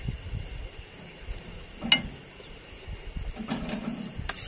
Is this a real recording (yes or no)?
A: yes